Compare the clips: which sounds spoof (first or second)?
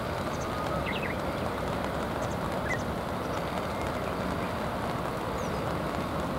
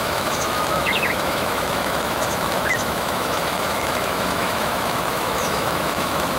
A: second